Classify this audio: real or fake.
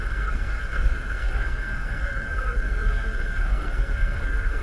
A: fake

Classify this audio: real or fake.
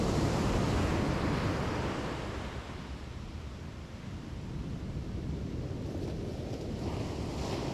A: real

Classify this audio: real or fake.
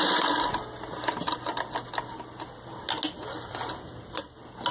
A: real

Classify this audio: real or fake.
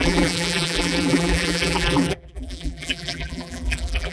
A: fake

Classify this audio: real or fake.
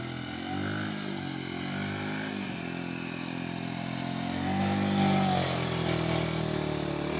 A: real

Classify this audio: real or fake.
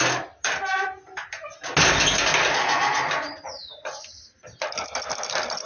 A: real